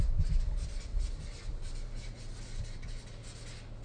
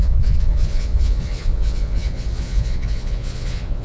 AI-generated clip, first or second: second